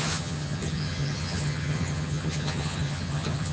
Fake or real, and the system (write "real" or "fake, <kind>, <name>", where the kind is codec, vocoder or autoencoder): fake, vocoder, HiFi-GAN